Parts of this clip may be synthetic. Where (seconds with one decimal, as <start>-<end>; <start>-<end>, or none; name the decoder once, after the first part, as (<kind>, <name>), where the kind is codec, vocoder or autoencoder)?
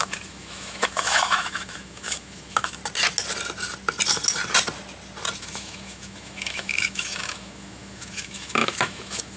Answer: 0.0-2.8 (autoencoder, DAC-VAE); 5.4-9.4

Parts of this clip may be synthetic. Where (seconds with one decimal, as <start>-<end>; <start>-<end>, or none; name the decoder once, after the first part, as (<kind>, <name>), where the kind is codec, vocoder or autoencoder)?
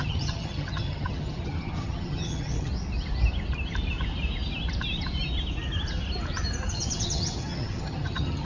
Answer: 0.0-2.7 (vocoder, HiFi-GAN); 6.7-8.4